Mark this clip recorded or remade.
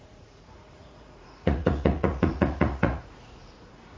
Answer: remade